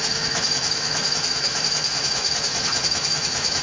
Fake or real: fake